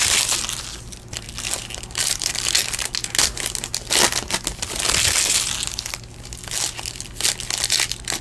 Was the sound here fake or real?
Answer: real